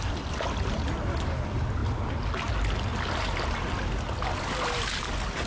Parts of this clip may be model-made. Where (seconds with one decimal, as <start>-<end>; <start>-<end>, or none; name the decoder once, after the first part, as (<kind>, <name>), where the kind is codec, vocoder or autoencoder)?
none